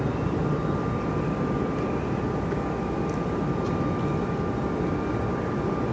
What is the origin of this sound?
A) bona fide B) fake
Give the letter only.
A